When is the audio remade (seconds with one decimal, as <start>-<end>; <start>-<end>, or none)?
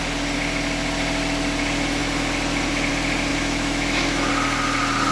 3.3-4.3